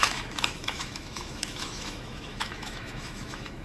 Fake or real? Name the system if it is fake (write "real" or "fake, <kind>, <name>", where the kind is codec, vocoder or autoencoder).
fake, autoencoder, DAC-VAE